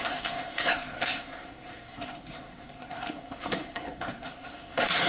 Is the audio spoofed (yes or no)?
yes